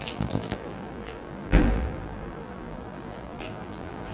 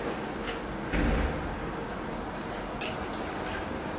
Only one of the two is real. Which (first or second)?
second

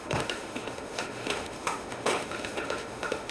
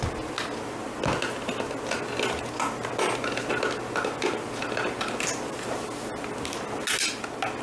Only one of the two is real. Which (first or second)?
second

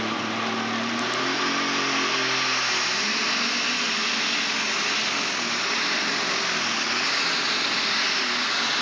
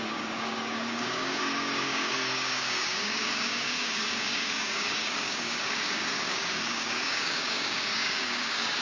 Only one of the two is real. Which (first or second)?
first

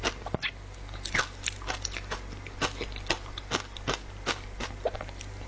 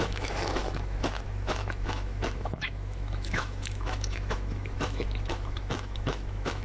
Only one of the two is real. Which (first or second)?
first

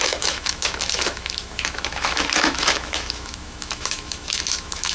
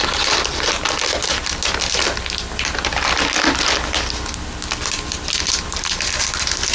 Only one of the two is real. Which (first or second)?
second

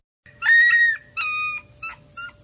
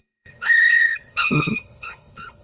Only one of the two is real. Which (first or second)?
first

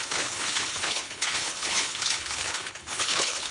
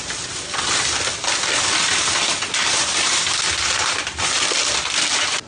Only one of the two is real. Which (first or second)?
second